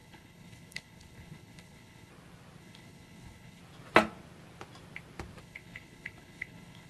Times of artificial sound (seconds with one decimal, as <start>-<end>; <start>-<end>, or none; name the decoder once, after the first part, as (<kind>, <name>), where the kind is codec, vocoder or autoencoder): 0.0-2.1 (codec, HILCodec); 2.6-3.6; 5.4-6.9